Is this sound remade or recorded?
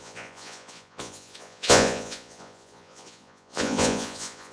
remade